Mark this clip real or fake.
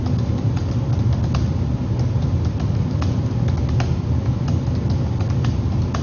real